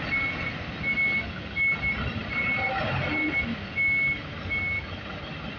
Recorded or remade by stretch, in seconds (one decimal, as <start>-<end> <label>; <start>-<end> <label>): 0.0-5.6 recorded